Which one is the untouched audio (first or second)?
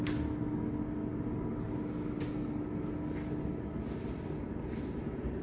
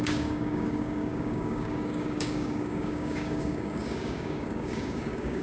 first